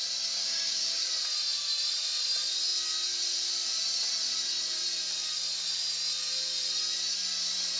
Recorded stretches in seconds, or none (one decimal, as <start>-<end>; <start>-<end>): 0.0-0.4; 1.1-7.8